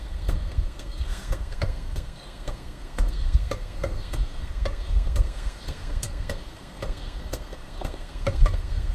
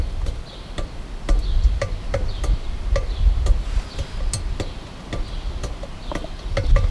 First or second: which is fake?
first